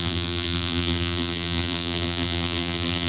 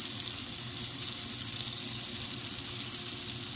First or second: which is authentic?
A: second